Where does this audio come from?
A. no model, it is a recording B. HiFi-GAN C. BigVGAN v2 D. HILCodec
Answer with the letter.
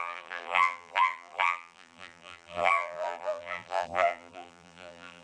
C